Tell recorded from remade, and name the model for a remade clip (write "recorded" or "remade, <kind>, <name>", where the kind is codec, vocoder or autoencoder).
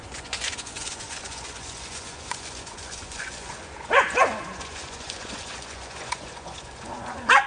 remade, vocoder, Vocos